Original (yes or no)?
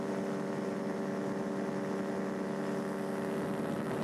yes